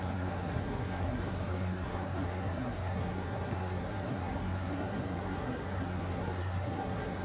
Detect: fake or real fake